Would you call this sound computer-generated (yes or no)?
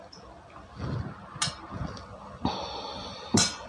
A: no